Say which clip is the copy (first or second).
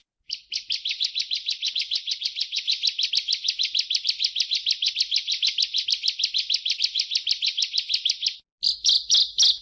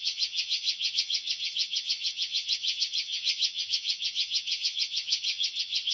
second